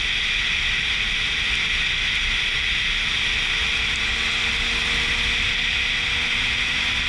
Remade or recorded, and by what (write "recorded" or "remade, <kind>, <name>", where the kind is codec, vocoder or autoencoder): recorded